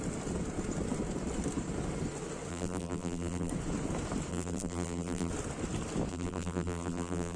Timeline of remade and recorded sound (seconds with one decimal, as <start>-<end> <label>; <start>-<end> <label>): 0.0-2.5 recorded; 2.5-3.5 remade; 3.5-4.3 recorded; 4.3-5.3 remade; 5.3-6.1 recorded; 6.1-7.4 remade